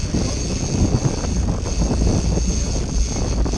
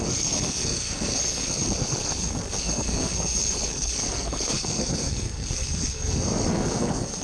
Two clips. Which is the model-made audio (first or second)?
second